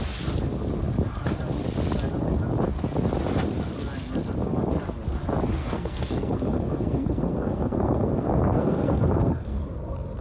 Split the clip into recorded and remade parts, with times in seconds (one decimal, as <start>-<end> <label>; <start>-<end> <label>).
0.0-5.6 recorded; 5.6-9.6 remade; 9.6-10.2 recorded